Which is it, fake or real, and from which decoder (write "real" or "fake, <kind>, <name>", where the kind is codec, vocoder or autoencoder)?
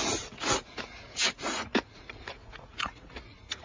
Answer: fake, vocoder, Vocos